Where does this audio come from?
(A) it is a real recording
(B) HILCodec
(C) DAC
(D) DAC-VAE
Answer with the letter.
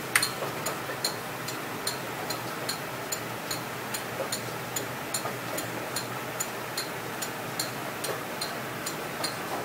A